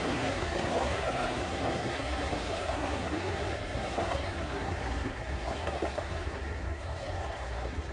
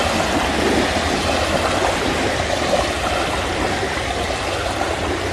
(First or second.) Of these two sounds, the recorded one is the second